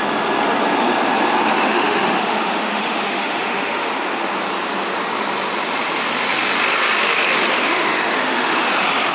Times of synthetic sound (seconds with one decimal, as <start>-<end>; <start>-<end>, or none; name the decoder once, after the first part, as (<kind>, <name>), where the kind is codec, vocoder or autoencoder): 1.6-3.9 (autoencoder, DAC-VAE); 7.6-8.7